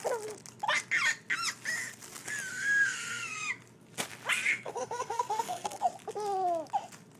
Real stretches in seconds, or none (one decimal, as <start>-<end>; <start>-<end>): 0.0-2.5; 3.5-4.5; 5.9-7.2